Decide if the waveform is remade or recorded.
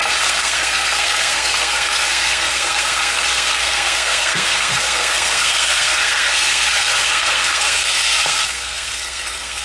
remade